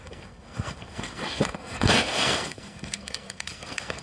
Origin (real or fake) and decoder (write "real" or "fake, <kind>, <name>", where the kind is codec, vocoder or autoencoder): fake, codec, SNAC